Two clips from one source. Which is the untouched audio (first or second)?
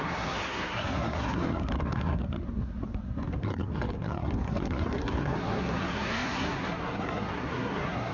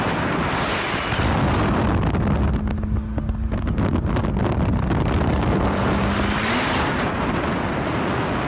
second